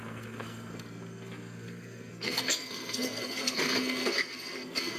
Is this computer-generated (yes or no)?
yes